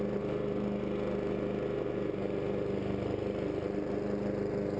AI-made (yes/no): no